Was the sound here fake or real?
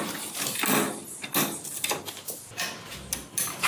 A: real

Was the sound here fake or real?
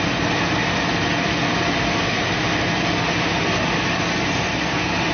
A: real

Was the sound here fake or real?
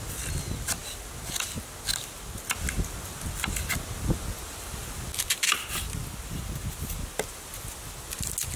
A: real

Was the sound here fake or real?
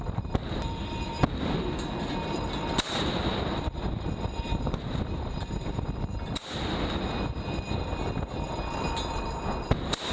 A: real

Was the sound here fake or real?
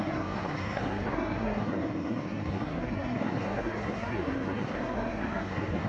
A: fake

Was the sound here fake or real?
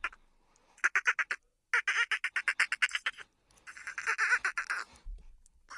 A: real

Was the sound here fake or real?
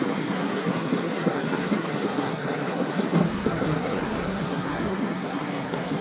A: fake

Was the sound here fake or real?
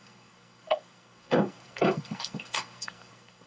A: fake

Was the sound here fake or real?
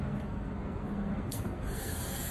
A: fake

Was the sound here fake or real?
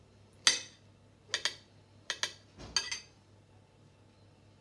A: real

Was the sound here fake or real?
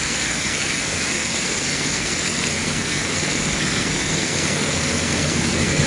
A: fake